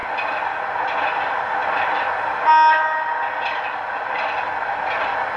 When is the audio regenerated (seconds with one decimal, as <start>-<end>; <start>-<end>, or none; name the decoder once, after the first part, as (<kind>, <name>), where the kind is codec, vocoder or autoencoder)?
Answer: none